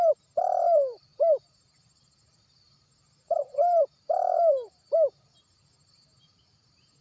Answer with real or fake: fake